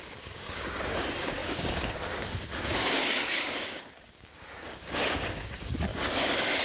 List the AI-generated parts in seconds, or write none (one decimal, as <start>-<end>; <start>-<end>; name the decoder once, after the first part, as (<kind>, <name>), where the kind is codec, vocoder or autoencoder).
0.0-6.6 (codec, DAC)